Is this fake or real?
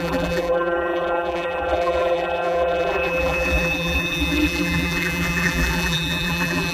fake